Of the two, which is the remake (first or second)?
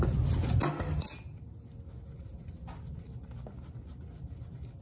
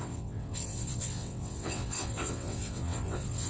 second